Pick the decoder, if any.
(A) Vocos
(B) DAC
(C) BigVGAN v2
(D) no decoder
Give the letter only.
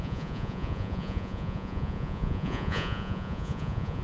A